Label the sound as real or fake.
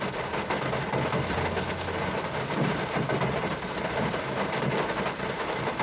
real